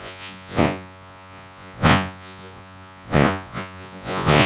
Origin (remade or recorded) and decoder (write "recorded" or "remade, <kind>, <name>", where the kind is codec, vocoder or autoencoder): remade, vocoder, Vocos